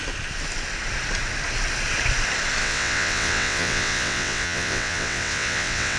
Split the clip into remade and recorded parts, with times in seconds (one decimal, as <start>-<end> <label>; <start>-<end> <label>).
0.0-2.6 recorded; 2.6-6.0 remade

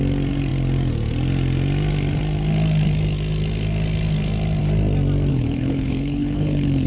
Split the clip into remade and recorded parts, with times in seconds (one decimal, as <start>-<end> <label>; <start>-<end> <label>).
0.0-5.3 recorded; 5.3-6.9 remade

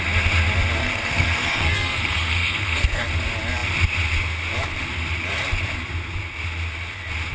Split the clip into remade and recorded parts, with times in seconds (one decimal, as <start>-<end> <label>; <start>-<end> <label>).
0.0-0.8 recorded; 0.8-3.0 remade; 3.0-7.3 recorded

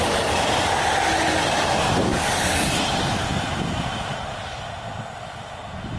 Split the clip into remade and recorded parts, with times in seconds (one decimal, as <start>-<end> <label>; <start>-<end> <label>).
0.0-6.0 recorded

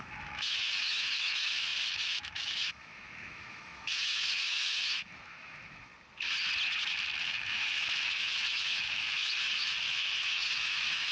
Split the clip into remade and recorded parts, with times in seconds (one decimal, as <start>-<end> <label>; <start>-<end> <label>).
0.0-5.9 remade; 5.9-7.2 recorded; 7.2-11.1 remade

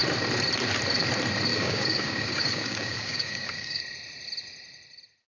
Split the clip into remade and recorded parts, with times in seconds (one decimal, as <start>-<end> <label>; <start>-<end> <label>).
0.0-1.5 recorded; 1.5-3.8 remade; 3.8-5.4 recorded

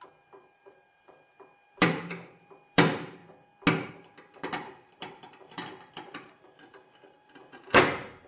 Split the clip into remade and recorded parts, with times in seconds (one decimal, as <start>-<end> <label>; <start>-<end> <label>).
0.0-3.2 remade; 3.2-3.9 recorded; 3.9-8.3 remade

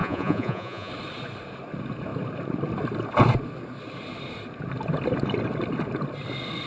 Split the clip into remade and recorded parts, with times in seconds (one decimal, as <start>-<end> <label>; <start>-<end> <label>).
0.0-0.9 remade; 0.9-6.7 recorded